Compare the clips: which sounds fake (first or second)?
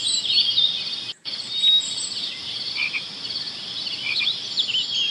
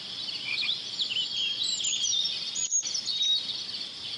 second